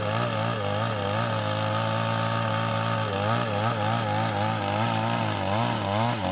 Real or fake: real